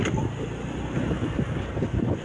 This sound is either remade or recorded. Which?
recorded